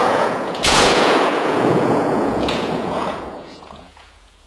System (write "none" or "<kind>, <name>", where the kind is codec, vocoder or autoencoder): vocoder, Vocos